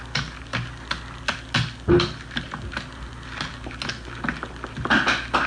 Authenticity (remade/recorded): recorded